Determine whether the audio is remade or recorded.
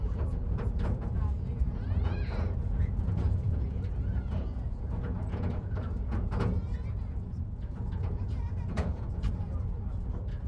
remade